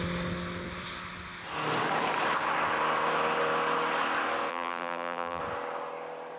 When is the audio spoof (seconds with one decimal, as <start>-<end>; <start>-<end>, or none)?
4.5-5.4